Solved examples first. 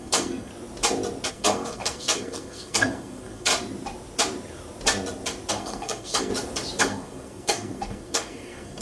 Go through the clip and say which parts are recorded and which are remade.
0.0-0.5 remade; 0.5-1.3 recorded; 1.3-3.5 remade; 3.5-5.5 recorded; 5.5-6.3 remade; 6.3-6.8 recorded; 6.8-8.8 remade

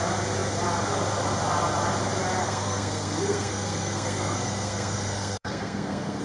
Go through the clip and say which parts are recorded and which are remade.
0.0-2.4 recorded; 2.4-6.2 remade

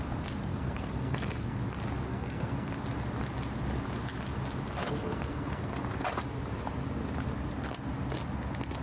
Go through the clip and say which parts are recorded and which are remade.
0.0-0.5 recorded; 0.5-1.6 remade; 1.6-2.1 recorded; 2.1-2.7 remade; 2.7-4.8 recorded; 4.8-5.7 remade; 5.7-8.8 recorded

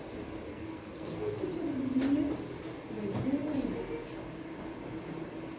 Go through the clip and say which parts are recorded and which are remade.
0.0-0.5 recorded; 0.5-1.4 remade; 1.4-5.6 recorded